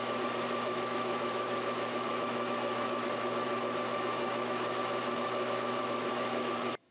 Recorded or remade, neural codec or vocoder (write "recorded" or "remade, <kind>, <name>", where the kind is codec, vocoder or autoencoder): remade, autoencoder, DAC-VAE